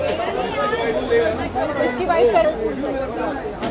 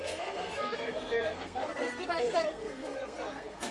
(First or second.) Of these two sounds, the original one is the first